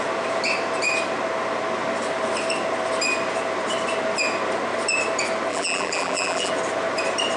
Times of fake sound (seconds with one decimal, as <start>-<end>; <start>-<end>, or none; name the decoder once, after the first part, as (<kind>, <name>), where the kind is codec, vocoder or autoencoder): 5.5-6.5 (vocoder, BigVGAN v2)